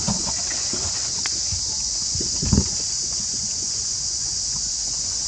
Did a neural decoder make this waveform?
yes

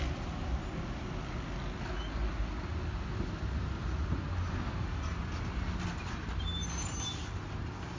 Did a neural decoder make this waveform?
no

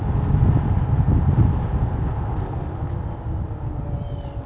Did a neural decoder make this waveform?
no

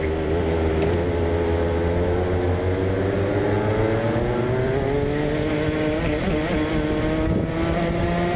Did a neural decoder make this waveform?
no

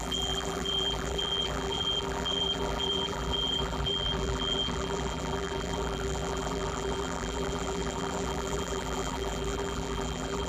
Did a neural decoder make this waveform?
yes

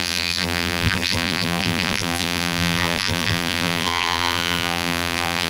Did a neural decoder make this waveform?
yes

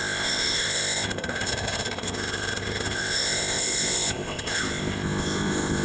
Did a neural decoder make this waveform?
yes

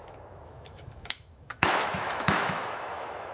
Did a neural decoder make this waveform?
yes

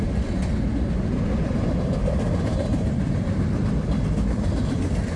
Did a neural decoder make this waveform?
no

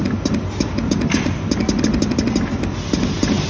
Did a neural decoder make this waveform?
no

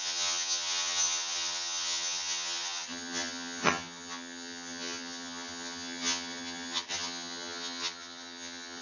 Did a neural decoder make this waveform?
yes